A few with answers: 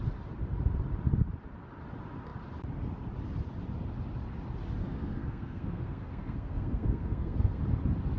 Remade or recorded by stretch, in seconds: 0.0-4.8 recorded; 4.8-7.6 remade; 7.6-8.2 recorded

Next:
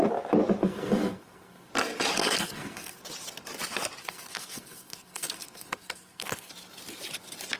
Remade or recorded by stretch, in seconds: 0.0-0.6 recorded; 0.6-1.7 remade; 1.7-2.2 recorded; 2.2-3.0 remade; 3.0-4.0 recorded; 4.0-6.5 remade; 6.5-7.6 recorded

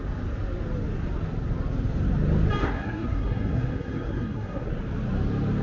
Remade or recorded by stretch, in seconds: 0.0-2.6 recorded; 2.6-4.7 remade; 4.7-5.6 recorded

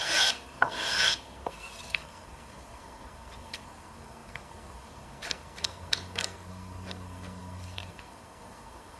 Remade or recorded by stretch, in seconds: 0.0-9.0 remade